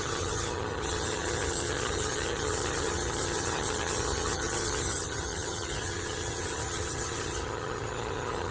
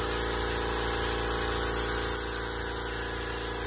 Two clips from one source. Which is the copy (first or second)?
first